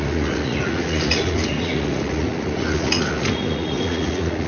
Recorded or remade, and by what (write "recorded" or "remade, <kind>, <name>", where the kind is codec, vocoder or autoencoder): remade, vocoder, Vocos